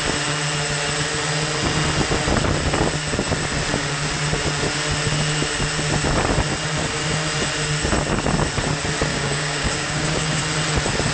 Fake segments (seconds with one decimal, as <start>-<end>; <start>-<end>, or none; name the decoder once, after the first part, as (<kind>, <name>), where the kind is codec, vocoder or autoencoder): 9.1-10.4 (codec, DAC)